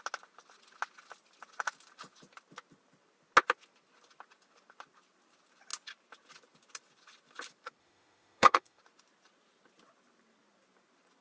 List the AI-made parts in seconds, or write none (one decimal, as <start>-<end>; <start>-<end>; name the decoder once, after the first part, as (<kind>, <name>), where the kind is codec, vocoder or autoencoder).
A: 7.8-8.8 (autoencoder, DAC-VAE)